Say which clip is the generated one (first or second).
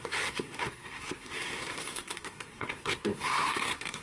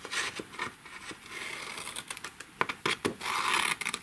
first